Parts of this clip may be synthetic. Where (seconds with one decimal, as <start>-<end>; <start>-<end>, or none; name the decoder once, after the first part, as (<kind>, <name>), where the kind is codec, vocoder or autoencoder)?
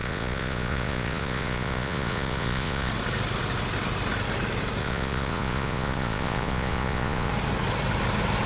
0.0-2.9 (vocoder, Vocos); 4.8-7.3